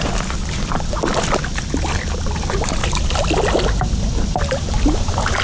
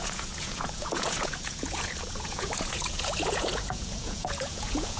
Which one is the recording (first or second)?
first